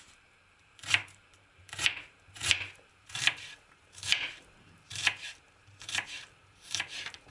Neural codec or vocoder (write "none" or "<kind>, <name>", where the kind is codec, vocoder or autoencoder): vocoder, BigVGAN v2